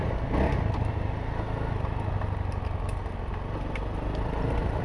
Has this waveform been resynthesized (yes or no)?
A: no